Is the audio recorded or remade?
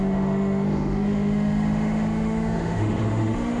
remade